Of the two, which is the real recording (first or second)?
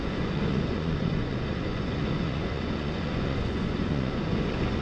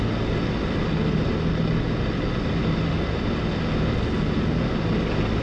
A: second